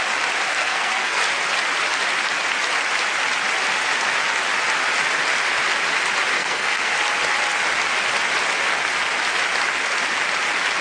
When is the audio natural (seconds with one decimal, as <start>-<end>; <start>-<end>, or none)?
0.0-0.5; 1.2-6.3; 6.9-10.8